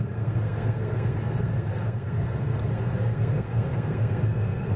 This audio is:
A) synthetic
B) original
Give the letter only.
A